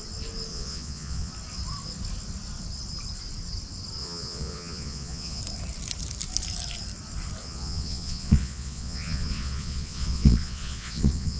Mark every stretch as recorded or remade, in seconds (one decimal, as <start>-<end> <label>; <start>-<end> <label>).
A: 0.0-0.5 recorded; 0.5-1.3 remade; 1.3-4.0 recorded; 4.0-5.4 remade; 5.4-7.4 recorded; 7.4-11.4 remade